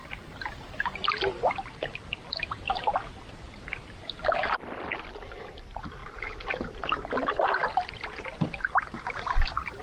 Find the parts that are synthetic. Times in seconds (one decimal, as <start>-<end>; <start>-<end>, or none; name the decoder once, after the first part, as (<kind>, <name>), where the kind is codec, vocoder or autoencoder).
none